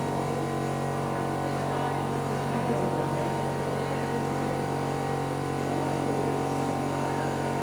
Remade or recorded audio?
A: recorded